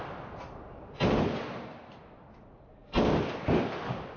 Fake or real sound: real